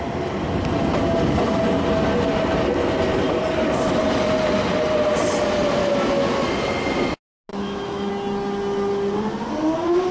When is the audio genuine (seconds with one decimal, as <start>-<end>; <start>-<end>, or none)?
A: 0.0-7.5; 8.1-10.1